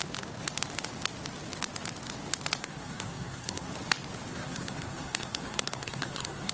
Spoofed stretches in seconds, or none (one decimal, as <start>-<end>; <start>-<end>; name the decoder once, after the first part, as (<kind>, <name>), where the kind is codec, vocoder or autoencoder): 2.6-3.7 (codec, SNAC); 4.3-6.5